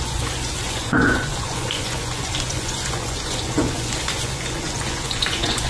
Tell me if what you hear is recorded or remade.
remade